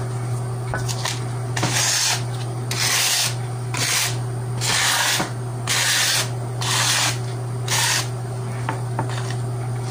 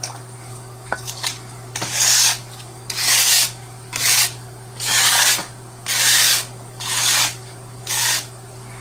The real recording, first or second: first